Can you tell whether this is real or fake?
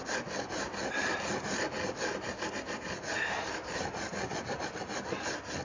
real